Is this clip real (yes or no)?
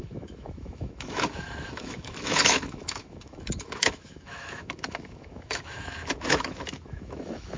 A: no